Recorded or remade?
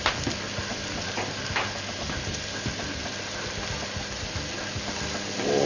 recorded